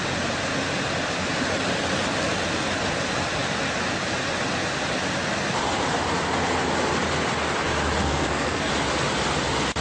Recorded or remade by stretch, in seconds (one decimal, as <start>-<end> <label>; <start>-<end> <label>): 0.0-8.0 recorded; 8.0-8.7 remade; 8.7-9.8 recorded